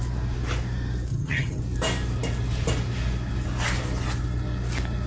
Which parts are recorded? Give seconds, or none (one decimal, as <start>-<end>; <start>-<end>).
0.0-1.1; 1.6-5.1